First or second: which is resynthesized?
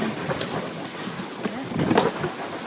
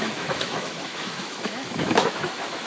second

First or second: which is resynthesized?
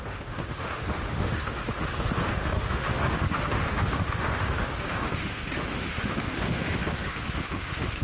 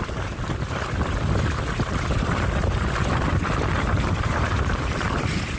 first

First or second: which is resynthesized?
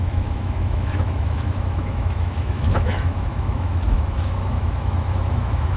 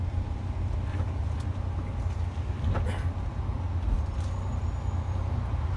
first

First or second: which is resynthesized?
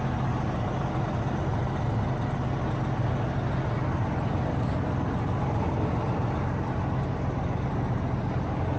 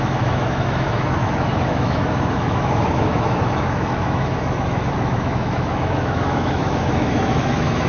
second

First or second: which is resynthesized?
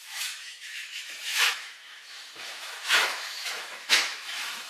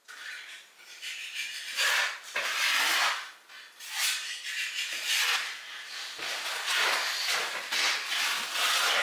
first